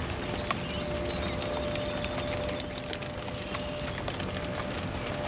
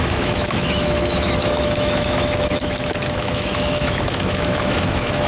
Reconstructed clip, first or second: second